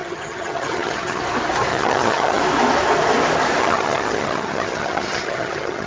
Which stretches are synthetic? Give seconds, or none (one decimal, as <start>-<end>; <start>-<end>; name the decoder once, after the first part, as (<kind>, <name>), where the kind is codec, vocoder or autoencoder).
0.0-1.2 (vocoder, HiFi-GAN); 1.7-2.4; 3.6-5.9